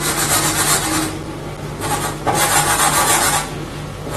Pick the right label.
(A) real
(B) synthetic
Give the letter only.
A